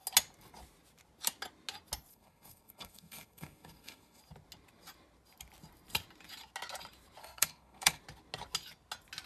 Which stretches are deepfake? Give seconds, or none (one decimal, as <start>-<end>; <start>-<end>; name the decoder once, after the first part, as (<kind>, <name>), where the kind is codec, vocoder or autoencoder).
2.1-4.2 (codec, SNAC); 7.2-8.0